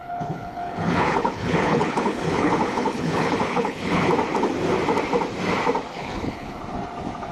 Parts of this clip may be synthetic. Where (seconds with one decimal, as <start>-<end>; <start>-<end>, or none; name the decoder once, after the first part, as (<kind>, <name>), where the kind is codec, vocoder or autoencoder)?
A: 0.0-4.1 (codec, HILCodec); 5.9-6.6